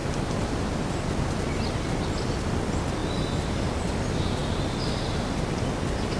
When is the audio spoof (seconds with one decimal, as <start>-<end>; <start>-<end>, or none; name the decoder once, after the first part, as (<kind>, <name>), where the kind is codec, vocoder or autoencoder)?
4.4-6.2 (vocoder, BigVGAN v2)